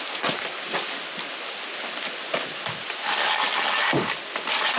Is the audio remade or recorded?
recorded